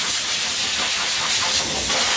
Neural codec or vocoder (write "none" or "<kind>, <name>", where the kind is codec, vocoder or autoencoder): none